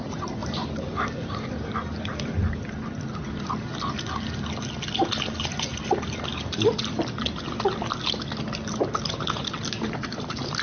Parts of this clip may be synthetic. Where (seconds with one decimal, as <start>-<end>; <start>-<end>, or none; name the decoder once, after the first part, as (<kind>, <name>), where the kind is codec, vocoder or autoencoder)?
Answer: 0.4-1.5 (vocoder, BigVGAN v2)